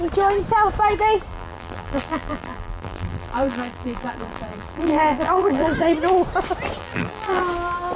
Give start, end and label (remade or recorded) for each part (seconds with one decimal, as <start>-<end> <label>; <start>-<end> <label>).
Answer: 0.0-1.3 recorded; 1.3-5.7 remade; 5.7-6.8 recorded; 6.8-7.4 remade; 7.4-8.0 recorded